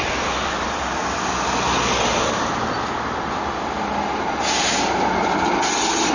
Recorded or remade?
recorded